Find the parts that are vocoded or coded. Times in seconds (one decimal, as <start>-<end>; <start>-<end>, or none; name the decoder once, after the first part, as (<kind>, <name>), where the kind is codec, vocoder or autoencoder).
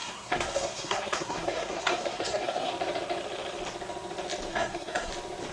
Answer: 0.0-2.7 (codec, SNAC); 4.5-5.1